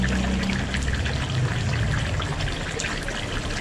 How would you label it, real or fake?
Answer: real